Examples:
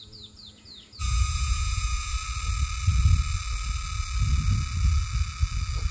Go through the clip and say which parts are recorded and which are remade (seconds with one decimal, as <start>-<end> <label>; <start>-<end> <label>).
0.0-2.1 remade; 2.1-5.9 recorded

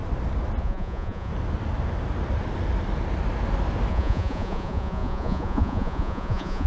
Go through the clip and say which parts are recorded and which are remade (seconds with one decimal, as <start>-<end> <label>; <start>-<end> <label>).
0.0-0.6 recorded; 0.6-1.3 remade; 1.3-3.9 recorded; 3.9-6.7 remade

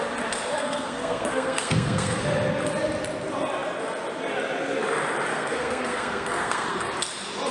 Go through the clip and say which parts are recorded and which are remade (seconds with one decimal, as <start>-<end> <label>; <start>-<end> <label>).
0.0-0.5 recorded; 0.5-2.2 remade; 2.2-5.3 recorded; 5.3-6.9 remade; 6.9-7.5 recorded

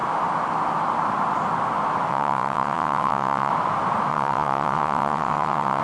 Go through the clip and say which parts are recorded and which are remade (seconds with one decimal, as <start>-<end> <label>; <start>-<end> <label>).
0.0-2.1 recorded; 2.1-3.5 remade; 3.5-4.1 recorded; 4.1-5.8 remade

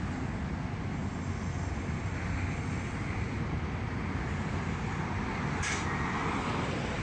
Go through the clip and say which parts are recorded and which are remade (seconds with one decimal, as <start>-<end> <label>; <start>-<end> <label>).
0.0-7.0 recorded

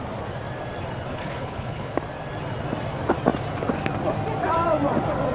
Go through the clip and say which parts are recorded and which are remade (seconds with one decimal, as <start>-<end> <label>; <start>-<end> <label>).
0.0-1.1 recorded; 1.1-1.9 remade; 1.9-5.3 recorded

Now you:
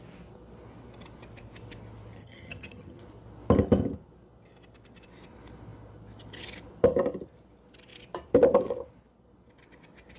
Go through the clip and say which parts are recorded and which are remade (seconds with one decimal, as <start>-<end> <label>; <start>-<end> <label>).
0.0-2.2 recorded; 2.2-3.0 remade; 3.0-10.2 recorded

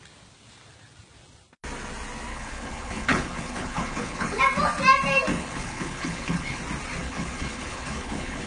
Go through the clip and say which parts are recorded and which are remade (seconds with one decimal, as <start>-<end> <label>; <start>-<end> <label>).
0.0-2.3 recorded; 2.3-4.4 remade; 4.4-5.3 recorded; 5.3-6.6 remade; 6.6-7.0 recorded; 7.0-8.5 remade